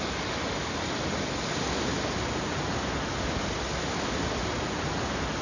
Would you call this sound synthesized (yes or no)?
no